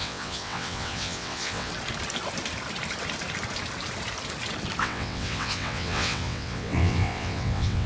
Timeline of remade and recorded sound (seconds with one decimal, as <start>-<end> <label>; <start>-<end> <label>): 0.0-1.7 remade; 1.7-4.8 recorded; 4.8-7.9 remade